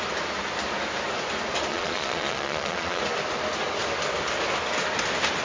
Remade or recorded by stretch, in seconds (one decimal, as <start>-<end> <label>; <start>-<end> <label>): 0.0-1.7 recorded; 1.7-3.0 remade; 3.0-5.4 recorded